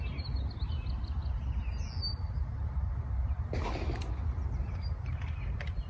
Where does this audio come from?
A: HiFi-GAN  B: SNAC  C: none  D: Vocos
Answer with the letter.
C